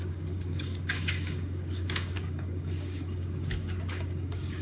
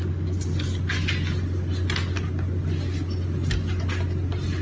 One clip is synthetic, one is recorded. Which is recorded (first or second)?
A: second